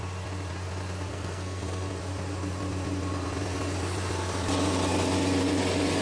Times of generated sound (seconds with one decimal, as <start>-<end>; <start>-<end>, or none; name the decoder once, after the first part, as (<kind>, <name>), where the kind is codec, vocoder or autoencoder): 1.1-2.0 (codec, SNAC)